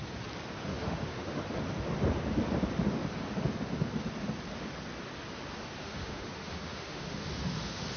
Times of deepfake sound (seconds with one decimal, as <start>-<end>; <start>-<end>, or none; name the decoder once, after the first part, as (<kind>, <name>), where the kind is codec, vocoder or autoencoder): 0.7-1.4 (autoencoder, DAC-VAE); 5.8-8.0